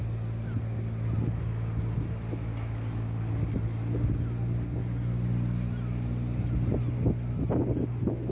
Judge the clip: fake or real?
real